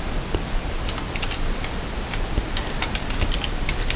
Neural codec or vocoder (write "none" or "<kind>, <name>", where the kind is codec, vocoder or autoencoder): none